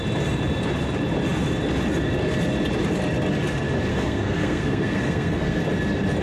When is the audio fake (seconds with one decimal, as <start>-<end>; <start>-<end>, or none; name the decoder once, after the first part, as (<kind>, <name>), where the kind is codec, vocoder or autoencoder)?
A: 3.9-5.6 (codec, SNAC)